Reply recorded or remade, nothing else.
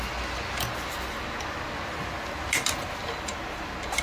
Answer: recorded